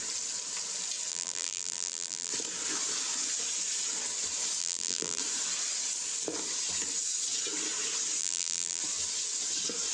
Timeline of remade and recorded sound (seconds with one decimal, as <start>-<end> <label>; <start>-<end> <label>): 0.0-1.1 recorded; 1.1-2.3 remade; 2.3-4.6 recorded; 4.6-5.2 remade; 5.2-8.2 recorded; 8.2-8.8 remade; 8.8-9.9 recorded